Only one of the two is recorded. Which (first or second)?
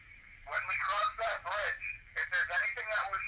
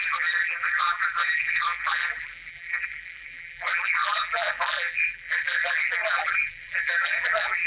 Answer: first